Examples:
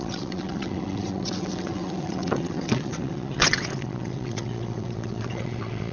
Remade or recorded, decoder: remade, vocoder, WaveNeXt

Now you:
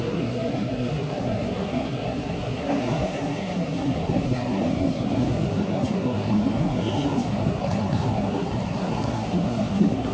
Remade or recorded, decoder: remade, codec, SNAC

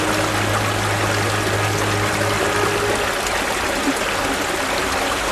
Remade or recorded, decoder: recorded